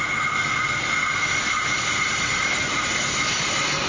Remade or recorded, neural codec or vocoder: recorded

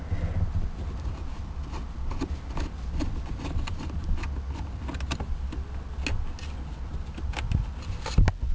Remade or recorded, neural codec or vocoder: recorded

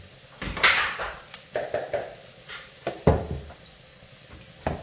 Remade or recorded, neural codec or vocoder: recorded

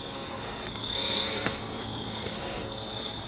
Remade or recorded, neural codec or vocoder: remade, codec, SNAC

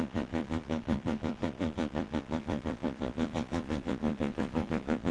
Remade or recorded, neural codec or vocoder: remade, vocoder, Vocos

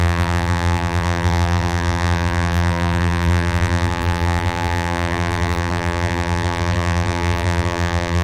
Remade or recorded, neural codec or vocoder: remade, vocoder, BigVGAN v2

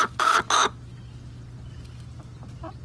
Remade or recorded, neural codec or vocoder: recorded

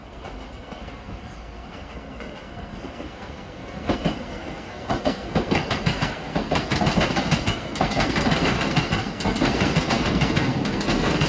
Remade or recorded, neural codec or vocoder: remade, codec, SNAC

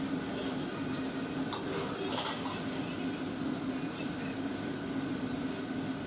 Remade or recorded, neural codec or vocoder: recorded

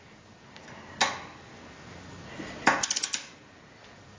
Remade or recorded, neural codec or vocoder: recorded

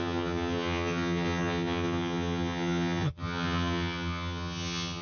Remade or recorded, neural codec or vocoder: remade, vocoder, HiFi-GAN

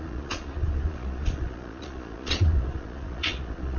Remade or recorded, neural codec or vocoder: remade, vocoder, Vocos